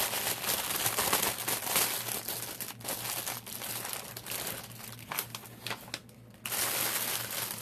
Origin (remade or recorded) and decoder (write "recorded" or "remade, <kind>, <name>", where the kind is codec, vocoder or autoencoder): recorded